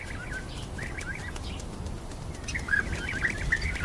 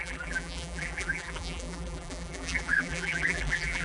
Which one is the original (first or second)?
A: first